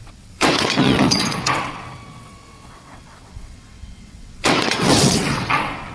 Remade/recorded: remade